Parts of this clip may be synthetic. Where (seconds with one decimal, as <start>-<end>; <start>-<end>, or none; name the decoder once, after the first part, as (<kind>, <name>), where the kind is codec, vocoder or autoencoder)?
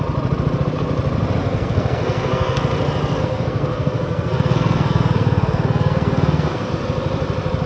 1.4-2.6 (codec, SNAC); 3.2-6.7